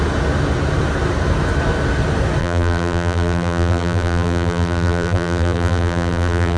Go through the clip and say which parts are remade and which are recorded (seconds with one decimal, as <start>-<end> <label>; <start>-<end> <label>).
0.0-2.4 recorded; 2.4-6.6 remade